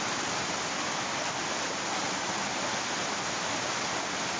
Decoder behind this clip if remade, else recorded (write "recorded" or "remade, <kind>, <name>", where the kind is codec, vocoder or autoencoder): recorded